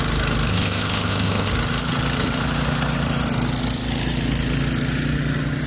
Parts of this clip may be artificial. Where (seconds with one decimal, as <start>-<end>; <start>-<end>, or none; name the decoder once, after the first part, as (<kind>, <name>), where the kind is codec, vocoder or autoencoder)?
0.5-1.5 (codec, ZipCodec)